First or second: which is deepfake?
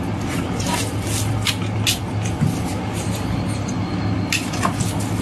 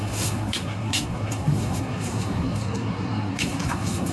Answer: second